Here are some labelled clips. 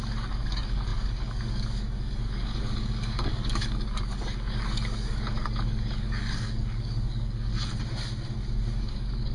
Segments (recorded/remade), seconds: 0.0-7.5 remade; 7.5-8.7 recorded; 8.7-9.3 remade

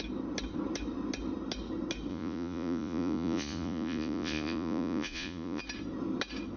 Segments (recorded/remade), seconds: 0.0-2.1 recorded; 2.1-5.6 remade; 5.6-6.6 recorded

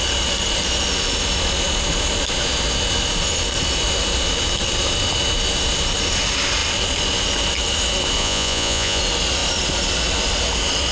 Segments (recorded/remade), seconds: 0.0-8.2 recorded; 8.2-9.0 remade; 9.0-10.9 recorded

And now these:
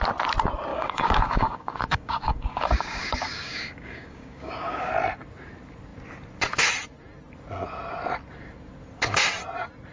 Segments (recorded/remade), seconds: 0.0-0.7 recorded; 0.7-4.9 remade; 4.9-9.9 recorded